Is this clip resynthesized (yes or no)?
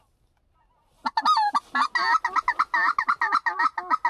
no